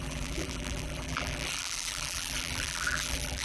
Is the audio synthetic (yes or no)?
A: yes